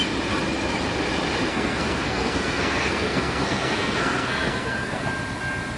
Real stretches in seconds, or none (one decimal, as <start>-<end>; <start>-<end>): 0.0-1.5; 5.0-5.8